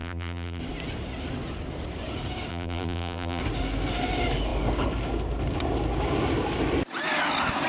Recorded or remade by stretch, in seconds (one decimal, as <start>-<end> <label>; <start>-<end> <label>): 0.0-0.6 remade; 0.6-2.5 recorded; 2.5-3.4 remade; 3.4-7.7 recorded